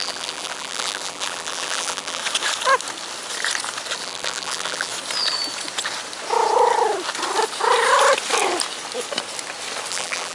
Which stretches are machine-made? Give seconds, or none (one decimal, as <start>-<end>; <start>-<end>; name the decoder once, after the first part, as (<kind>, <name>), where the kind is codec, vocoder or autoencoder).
0.0-2.2 (vocoder, BigVGAN v2); 4.0-4.9; 9.9-10.3